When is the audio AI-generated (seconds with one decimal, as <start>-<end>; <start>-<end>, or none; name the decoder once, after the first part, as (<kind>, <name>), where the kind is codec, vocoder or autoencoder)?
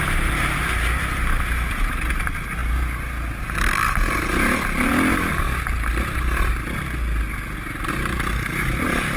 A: none